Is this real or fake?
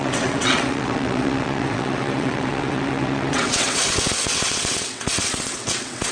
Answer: fake